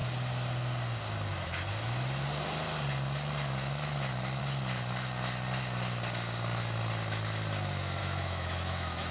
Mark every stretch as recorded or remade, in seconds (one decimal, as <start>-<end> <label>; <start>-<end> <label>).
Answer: 0.0-8.0 recorded; 8.0-9.1 remade